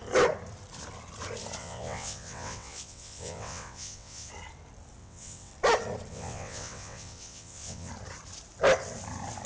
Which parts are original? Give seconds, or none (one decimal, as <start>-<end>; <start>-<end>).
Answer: 0.0-1.6; 4.3-5.0; 5.5-6.1; 7.9-9.5